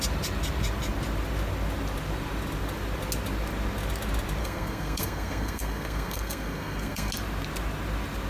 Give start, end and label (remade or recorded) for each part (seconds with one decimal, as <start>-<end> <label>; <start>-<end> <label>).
0.0-4.4 recorded; 4.4-7.1 remade; 7.1-8.3 recorded